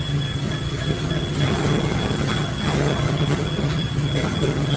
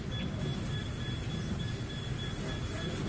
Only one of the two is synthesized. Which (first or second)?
first